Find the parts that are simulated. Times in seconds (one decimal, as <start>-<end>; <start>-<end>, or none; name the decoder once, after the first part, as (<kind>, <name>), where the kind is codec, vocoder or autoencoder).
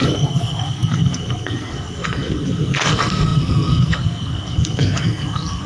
0.0-5.7 (codec, SNAC)